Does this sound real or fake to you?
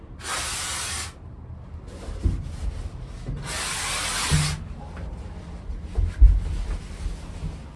real